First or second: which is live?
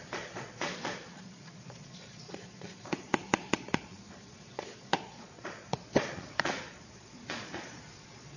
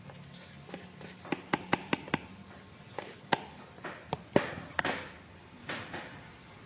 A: second